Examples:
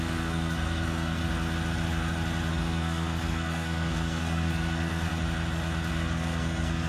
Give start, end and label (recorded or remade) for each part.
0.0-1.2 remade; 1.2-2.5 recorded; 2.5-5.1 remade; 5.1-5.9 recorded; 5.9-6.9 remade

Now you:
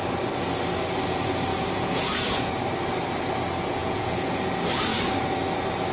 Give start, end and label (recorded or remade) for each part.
0.0-1.5 recorded; 1.5-2.5 remade; 2.5-3.8 recorded; 3.8-4.5 remade; 4.5-5.9 recorded